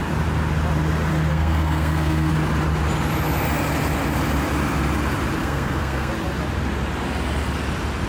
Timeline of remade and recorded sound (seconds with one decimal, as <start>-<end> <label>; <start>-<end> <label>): 0.0-1.3 recorded; 1.3-2.3 remade; 2.3-5.4 recorded; 5.4-6.1 remade; 6.1-8.1 recorded